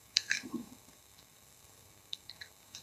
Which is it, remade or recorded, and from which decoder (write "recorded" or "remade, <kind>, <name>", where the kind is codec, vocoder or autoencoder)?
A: remade, codec, SNAC